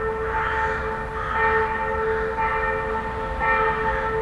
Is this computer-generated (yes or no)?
no